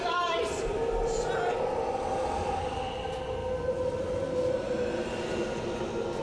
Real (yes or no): yes